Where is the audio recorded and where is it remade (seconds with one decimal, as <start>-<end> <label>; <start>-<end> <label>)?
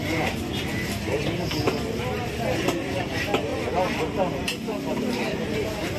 0.0-6.0 recorded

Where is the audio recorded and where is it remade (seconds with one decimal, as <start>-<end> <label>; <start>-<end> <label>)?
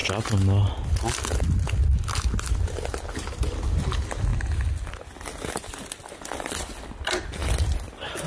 0.0-8.3 recorded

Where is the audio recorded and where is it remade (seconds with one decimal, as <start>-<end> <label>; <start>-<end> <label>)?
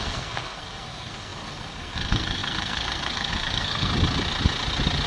0.0-3.9 remade; 3.9-5.1 recorded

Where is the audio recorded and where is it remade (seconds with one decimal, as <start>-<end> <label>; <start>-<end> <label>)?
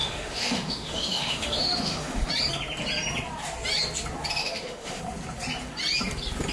0.0-2.3 remade; 2.3-4.4 recorded; 4.4-5.0 remade; 5.0-6.5 recorded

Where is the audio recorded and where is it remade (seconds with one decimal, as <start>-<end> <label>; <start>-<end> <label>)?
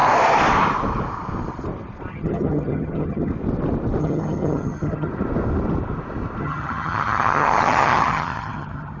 0.0-2.1 recorded; 2.1-3.3 remade; 3.3-4.0 recorded; 4.0-5.1 remade; 5.1-6.4 recorded; 6.4-9.0 remade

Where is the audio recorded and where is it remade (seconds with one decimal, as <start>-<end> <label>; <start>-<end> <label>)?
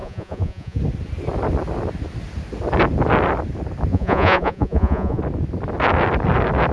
0.0-0.8 remade; 0.8-3.9 recorded; 3.9-5.2 remade; 5.2-6.7 recorded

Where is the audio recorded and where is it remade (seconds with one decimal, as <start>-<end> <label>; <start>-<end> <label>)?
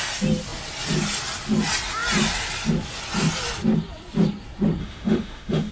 0.0-4.8 recorded; 4.8-5.7 remade